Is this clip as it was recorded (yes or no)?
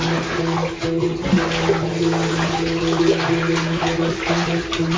yes